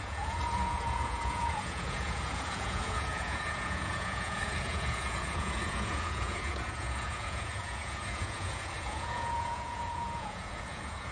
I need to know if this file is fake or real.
fake